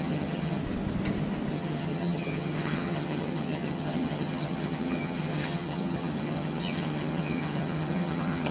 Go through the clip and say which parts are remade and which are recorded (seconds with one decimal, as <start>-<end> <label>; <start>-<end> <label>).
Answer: 0.0-0.6 remade; 0.6-1.5 recorded; 1.5-8.5 remade